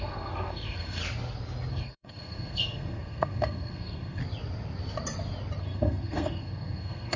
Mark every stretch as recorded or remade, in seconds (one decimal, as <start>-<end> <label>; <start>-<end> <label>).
0.0-1.0 remade; 1.0-1.7 recorded; 1.7-4.2 remade; 4.2-5.6 recorded; 5.6-7.2 remade